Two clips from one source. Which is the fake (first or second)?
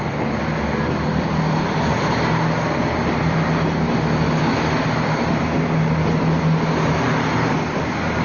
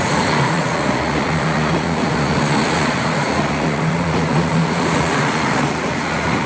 second